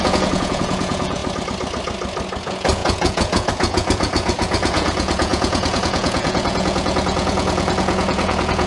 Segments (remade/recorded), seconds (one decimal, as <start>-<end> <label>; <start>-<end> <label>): 0.0-1.2 remade; 1.2-2.4 recorded; 2.4-8.7 remade

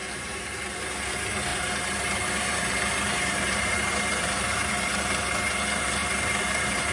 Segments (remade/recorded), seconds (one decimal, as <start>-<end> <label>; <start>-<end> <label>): 0.0-0.6 remade; 0.6-1.5 recorded; 1.5-5.2 remade; 5.2-6.0 recorded; 6.0-6.9 remade

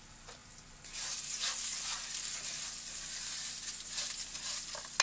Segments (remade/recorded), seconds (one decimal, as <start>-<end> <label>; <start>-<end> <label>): 0.0-5.0 recorded

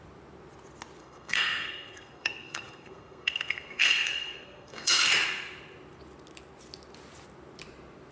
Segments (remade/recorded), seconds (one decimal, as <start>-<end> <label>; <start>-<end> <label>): 0.0-1.0 recorded; 1.0-5.0 remade; 5.0-8.1 recorded

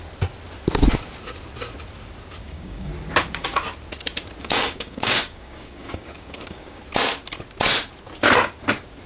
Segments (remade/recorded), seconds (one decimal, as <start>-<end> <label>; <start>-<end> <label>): 0.0-2.4 recorded; 2.4-2.9 remade; 2.9-4.4 recorded; 4.4-6.8 remade; 6.8-9.1 recorded

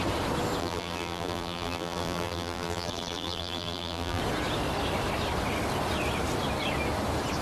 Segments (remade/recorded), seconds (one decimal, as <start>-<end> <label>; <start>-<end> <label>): 0.0-0.6 recorded; 0.6-4.2 remade; 4.2-7.4 recorded

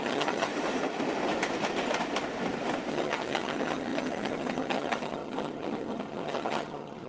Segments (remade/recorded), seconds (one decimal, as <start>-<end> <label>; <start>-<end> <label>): 0.0-0.5 remade; 0.5-2.9 recorded; 2.9-7.1 remade

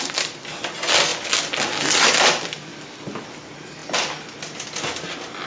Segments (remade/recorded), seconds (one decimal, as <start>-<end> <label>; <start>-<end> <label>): 0.0-5.5 recorded